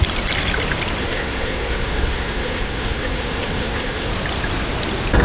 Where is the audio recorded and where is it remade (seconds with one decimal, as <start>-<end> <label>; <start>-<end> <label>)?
0.0-1.0 recorded; 1.0-4.1 remade; 4.1-5.2 recorded